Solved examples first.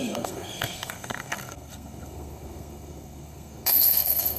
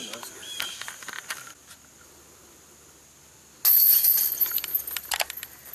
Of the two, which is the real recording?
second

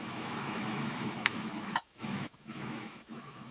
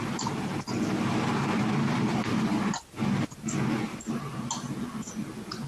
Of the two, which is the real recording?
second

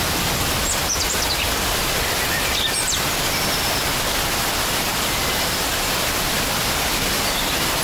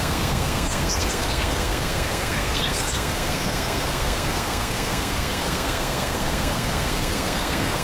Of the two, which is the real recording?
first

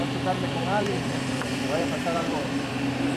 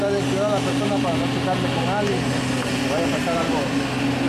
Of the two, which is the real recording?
second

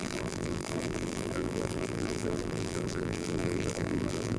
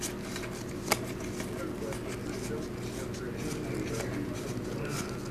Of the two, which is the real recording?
second